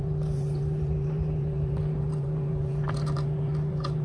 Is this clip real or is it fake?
fake